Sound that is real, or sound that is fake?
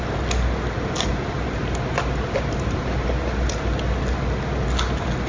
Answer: real